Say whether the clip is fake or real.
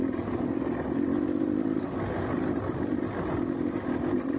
real